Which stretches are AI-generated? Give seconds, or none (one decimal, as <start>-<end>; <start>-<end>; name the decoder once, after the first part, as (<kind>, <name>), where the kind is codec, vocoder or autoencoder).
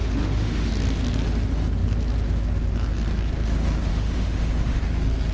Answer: 0.0-0.7 (autoencoder, DAC-VAE); 3.9-4.8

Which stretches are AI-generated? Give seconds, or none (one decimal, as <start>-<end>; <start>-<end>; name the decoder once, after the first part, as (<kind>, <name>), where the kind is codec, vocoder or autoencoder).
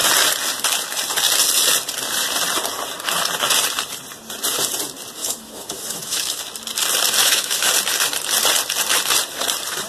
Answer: 5.2-6.4 (autoencoder, DAC-VAE); 7.2-7.7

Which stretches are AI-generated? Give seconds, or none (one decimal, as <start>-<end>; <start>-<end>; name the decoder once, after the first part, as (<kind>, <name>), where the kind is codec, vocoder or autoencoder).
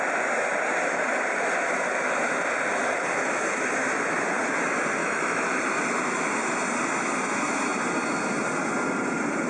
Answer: 5.0-5.6 (autoencoder, DAC-VAE)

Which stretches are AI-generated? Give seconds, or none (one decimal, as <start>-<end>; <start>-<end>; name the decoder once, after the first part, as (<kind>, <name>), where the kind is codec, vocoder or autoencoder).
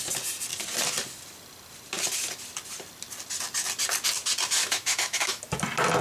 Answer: 4.6-5.4 (autoencoder, DAC-VAE)